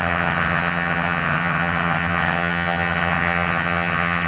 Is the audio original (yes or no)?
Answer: no